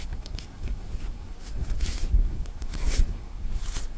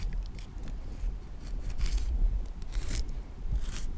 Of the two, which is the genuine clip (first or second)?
second